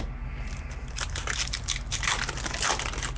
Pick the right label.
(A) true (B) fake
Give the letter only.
A